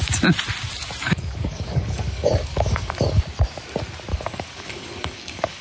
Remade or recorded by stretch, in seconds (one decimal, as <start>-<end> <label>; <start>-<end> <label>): 0.0-1.0 recorded; 1.0-3.2 remade; 3.2-4.1 recorded; 4.1-5.6 remade